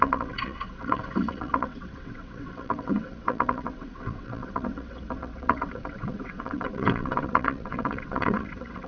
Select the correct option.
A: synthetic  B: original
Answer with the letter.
A